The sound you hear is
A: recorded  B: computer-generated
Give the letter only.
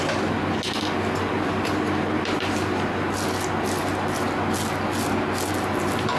A